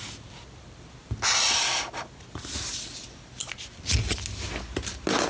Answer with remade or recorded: recorded